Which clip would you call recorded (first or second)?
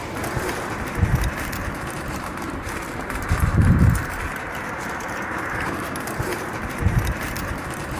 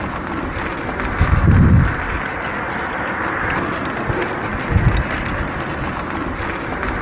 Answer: second